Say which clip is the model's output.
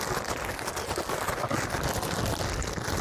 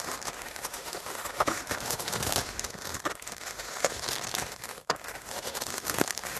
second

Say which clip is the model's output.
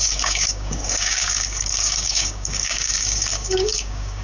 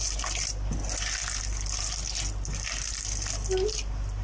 first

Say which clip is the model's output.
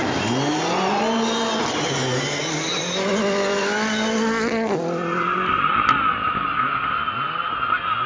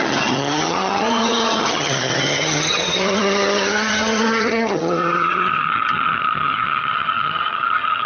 second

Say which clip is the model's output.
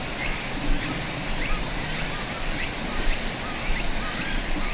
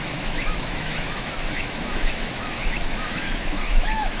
second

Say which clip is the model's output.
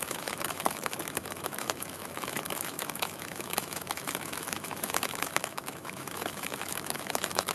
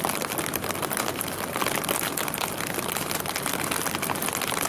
first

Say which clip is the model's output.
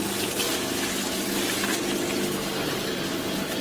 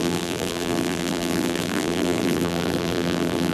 second